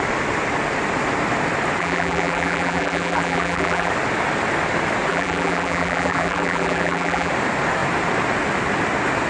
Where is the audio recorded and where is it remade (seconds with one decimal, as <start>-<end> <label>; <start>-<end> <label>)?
0.0-1.8 recorded; 1.8-3.9 remade; 3.9-5.1 recorded; 5.1-7.3 remade; 7.3-9.3 recorded